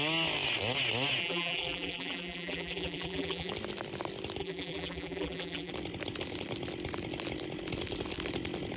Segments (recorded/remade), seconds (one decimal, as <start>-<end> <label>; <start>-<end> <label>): 0.0-1.2 recorded; 1.2-3.5 remade; 3.5-4.4 recorded; 4.4-5.7 remade; 5.7-8.8 recorded